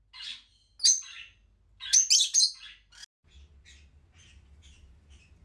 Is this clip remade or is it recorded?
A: recorded